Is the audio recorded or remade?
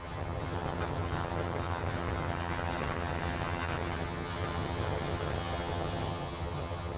remade